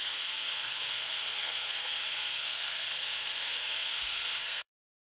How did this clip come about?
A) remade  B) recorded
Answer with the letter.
A